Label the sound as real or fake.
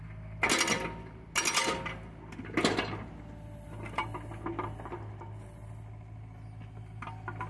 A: real